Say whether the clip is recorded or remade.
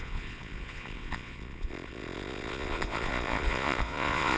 remade